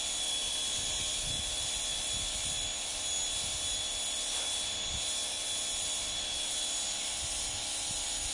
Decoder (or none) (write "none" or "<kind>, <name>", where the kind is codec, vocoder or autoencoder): none